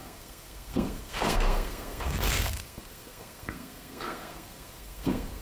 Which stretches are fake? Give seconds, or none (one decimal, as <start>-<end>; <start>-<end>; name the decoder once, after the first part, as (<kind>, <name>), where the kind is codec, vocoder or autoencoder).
0.0-5.4 (codec, SNAC)